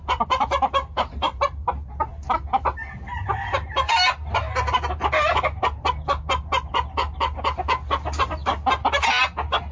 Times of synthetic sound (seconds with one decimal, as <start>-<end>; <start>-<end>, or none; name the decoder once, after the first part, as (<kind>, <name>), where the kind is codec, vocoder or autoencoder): none